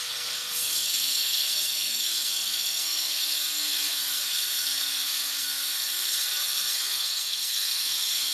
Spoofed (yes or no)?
yes